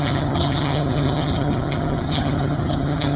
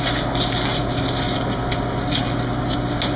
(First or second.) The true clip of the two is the second